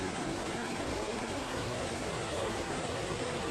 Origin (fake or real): fake